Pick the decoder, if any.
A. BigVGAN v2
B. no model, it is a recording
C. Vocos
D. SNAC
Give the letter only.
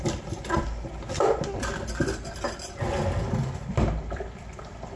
B